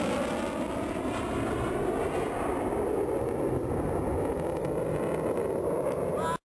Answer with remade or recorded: recorded